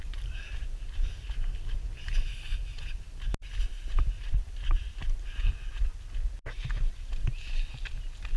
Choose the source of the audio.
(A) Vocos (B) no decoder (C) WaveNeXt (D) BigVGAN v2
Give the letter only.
B